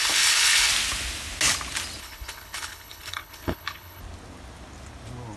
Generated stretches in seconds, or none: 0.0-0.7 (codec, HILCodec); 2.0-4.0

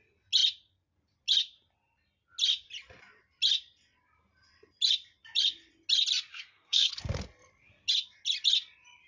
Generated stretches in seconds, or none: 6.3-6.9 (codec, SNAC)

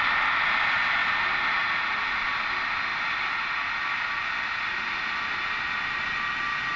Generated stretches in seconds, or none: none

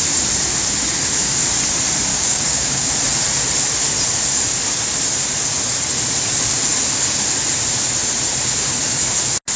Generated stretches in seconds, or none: 2.1-2.9 (codec, DAC)

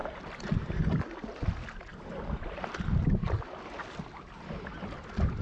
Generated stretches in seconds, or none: none

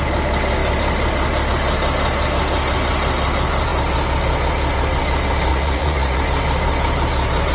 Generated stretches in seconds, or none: 5.5-6.2 (vocoder, Vocos)

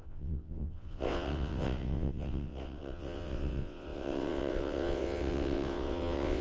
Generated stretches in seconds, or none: 0.0-6.4 (vocoder, WaveNeXt)